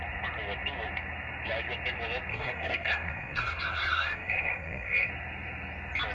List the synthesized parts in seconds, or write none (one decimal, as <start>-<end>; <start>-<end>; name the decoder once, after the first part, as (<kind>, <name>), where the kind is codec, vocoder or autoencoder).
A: 2.3-5.1 (codec, SNAC)